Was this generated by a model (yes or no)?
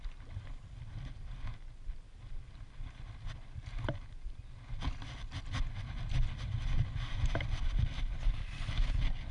no